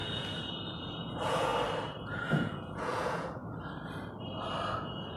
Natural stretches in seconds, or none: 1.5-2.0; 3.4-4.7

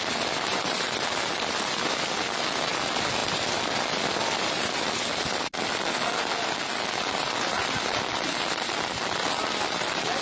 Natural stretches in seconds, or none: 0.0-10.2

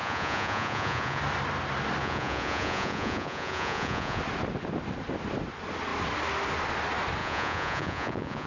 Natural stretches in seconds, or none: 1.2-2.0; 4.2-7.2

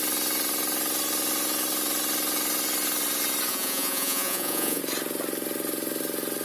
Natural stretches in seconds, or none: 0.0-3.5; 4.8-6.4